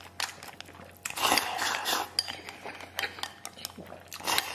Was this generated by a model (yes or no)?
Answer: no